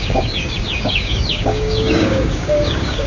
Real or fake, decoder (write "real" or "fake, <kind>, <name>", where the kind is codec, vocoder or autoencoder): fake, codec, DAC